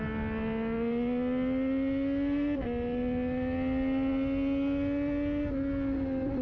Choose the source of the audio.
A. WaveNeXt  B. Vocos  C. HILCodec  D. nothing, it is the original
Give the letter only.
D